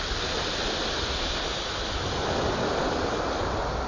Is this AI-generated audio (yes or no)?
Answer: no